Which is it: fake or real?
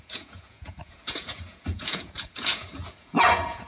fake